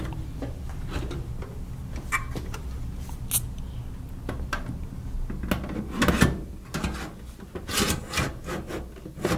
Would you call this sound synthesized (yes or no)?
no